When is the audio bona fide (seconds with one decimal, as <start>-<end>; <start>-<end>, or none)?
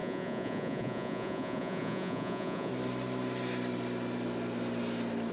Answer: 2.7-5.3